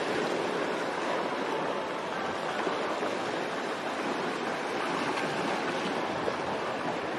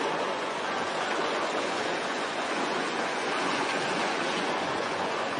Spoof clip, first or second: second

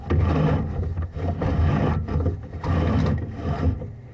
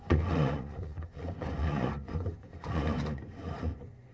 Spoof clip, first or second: second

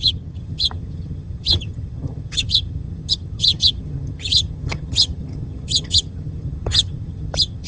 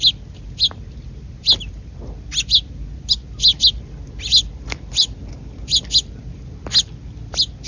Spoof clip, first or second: first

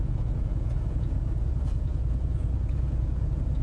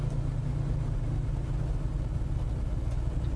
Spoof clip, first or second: first